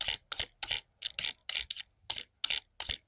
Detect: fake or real real